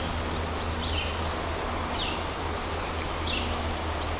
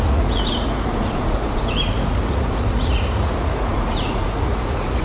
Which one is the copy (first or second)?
second